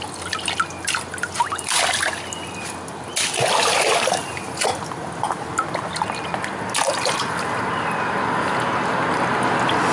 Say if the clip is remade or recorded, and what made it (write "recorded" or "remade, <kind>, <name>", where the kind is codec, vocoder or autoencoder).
recorded